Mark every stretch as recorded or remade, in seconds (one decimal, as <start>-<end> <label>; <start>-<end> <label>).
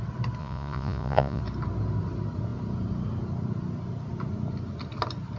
0.0-0.4 recorded; 0.4-1.4 remade; 1.4-5.4 recorded